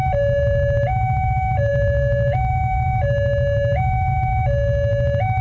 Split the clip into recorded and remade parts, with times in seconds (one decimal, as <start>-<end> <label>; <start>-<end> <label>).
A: 0.0-5.4 recorded